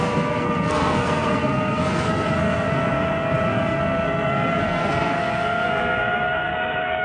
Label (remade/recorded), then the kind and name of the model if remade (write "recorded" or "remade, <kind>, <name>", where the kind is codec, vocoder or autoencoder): remade, codec, SNAC